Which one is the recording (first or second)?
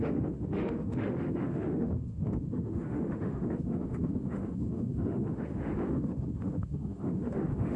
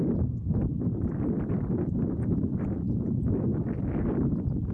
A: second